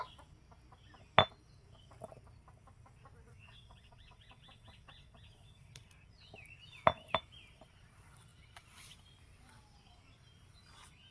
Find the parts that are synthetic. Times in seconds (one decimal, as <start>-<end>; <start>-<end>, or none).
3.3-5.9